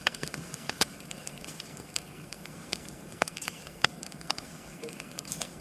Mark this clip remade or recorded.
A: remade